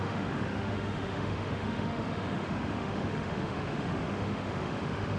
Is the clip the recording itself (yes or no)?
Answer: no